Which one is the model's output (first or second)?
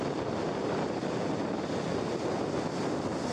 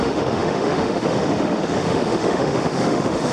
second